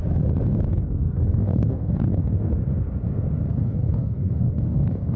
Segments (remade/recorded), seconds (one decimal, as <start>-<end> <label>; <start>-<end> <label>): 0.0-0.7 recorded; 0.7-2.5 remade; 2.5-3.5 recorded; 3.5-5.2 remade